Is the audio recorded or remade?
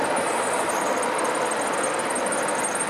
recorded